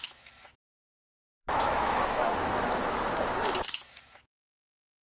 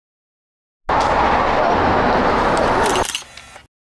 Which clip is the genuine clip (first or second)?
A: second